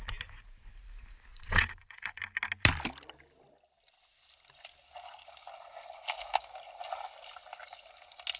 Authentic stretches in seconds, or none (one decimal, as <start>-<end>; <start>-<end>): 0.0-1.3; 2.2-8.4